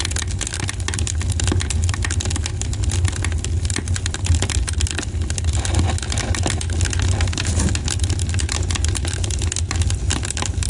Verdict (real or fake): real